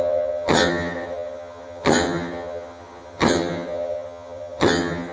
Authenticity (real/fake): fake